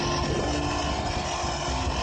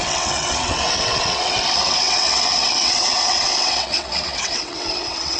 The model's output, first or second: second